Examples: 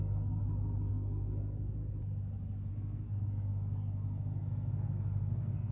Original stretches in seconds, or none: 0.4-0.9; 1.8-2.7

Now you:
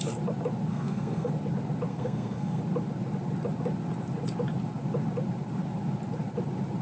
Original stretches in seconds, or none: 0.0-0.7; 1.3-1.9; 2.6-6.8

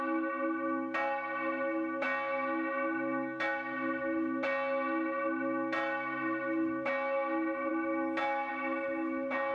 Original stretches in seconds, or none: 0.0-9.5

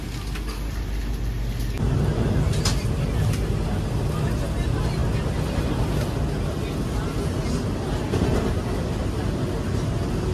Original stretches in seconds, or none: 0.0-10.3

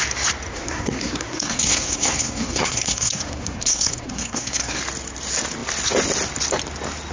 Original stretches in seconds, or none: 0.0-0.5; 4.8-7.1